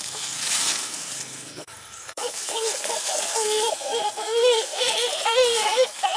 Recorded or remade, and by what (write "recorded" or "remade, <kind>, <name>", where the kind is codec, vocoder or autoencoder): remade, codec, SNAC